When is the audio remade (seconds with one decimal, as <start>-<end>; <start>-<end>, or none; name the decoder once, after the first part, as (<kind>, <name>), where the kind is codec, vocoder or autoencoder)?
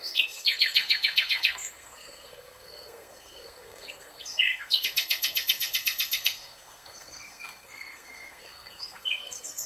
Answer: 0.0-9.7 (codec, SNAC)